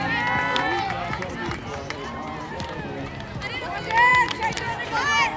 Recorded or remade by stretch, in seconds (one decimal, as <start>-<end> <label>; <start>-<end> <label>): 0.0-5.4 recorded